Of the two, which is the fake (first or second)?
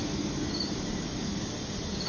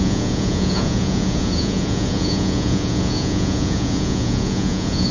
second